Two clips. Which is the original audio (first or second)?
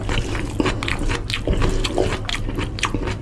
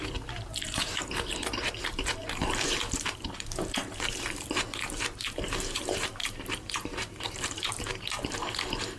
first